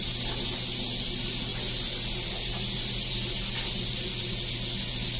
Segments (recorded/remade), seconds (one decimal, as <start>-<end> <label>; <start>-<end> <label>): 0.0-5.2 recorded